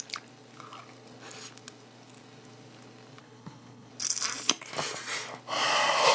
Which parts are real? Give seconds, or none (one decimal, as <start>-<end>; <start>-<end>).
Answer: 0.0-3.2; 3.9-6.1

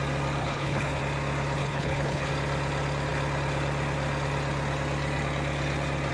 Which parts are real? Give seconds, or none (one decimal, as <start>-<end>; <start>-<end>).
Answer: 0.0-0.4; 1.0-1.6; 2.3-6.1

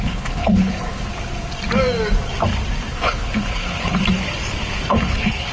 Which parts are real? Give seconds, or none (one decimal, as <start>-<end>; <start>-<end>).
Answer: 1.1-2.9; 4.0-4.9

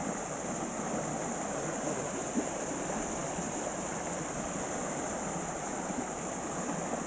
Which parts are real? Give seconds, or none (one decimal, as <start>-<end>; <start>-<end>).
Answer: 0.0-7.1

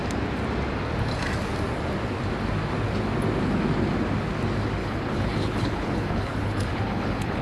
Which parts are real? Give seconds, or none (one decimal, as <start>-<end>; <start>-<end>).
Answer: 0.0-4.8

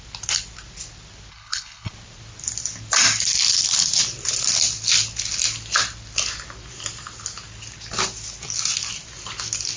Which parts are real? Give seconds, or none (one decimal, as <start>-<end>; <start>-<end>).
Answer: 0.0-1.3; 1.9-9.8

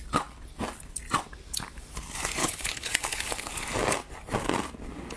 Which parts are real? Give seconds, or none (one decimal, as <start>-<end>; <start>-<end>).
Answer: 0.0-2.4; 3.5-5.2

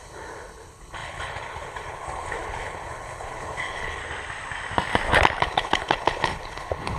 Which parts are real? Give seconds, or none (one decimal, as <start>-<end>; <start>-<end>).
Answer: 4.0-5.4